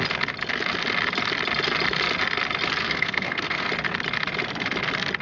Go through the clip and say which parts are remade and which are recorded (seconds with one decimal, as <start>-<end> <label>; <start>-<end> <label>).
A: 0.0-2.8 recorded; 2.8-3.7 remade; 3.7-5.2 recorded